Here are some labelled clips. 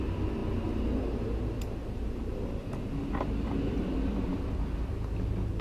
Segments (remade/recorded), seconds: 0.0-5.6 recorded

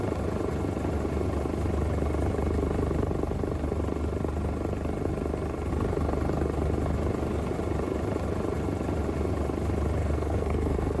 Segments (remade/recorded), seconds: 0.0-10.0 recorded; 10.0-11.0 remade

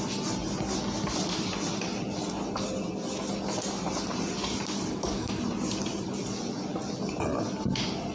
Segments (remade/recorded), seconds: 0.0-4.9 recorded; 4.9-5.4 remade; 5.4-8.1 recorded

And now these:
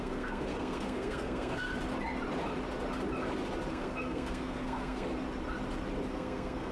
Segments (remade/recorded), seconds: 0.0-1.7 remade; 1.7-3.7 recorded; 3.7-5.1 remade; 5.1-6.1 recorded; 6.1-6.7 remade